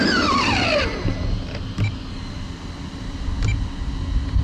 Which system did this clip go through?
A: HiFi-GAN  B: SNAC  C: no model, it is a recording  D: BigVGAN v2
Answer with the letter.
C